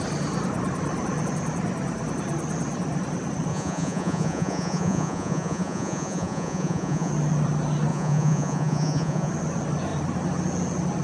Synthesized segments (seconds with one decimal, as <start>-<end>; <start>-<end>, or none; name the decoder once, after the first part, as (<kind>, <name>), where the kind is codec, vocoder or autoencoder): 3.5-7.1 (vocoder, Vocos); 7.9-9.3